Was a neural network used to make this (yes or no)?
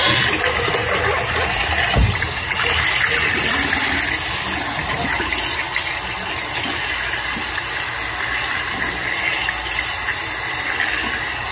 no